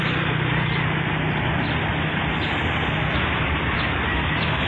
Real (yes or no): yes